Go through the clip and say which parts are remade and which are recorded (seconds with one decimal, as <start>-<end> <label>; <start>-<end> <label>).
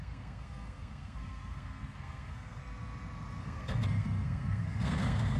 0.0-2.6 remade; 2.6-3.4 recorded; 3.4-5.4 remade